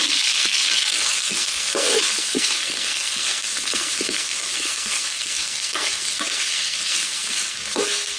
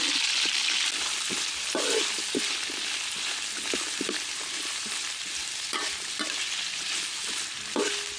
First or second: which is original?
second